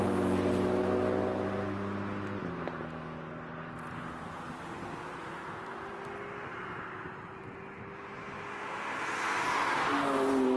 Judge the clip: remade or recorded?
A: recorded